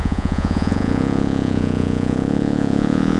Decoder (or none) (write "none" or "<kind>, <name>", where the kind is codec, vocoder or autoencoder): vocoder, Vocos